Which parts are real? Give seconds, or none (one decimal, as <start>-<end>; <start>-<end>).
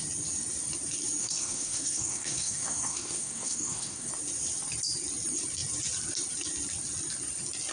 0.0-1.2; 4.1-7.7